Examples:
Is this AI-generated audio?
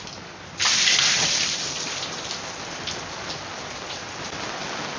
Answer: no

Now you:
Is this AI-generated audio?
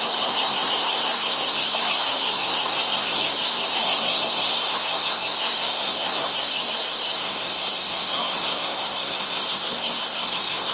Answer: yes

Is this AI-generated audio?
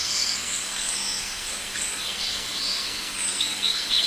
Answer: yes